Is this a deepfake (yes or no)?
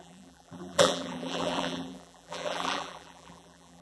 yes